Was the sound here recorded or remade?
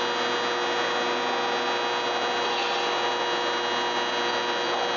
recorded